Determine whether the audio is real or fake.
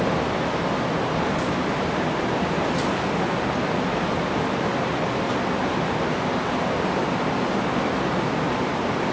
real